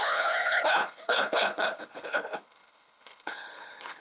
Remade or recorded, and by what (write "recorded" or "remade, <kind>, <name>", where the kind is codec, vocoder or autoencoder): remade, codec, HILCodec